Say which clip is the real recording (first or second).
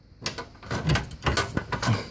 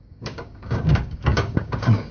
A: first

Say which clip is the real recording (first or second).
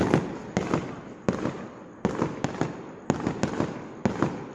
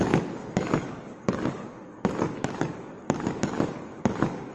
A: first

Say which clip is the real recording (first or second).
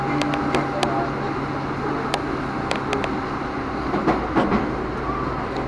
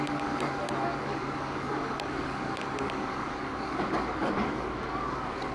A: first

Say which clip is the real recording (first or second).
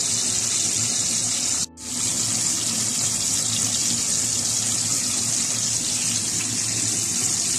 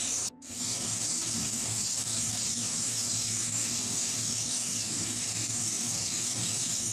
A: first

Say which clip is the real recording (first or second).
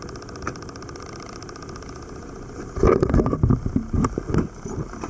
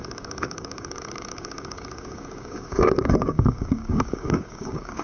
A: first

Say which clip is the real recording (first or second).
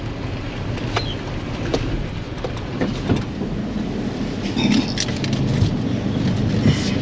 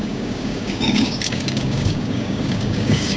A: first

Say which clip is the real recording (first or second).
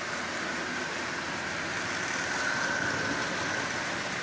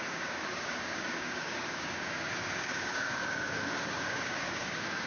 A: first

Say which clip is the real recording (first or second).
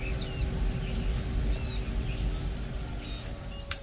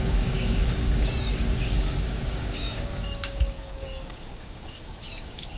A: first